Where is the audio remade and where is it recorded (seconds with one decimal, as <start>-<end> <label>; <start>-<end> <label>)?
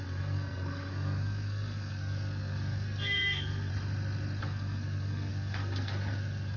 0.0-3.7 remade; 3.7-4.4 recorded; 4.4-6.6 remade